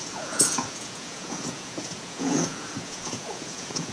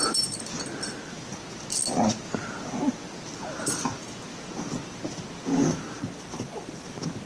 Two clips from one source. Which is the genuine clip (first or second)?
second